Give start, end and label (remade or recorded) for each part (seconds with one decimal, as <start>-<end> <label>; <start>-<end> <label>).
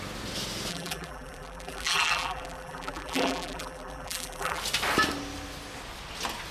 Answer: 0.0-0.7 recorded; 0.7-4.6 remade; 4.6-6.5 recorded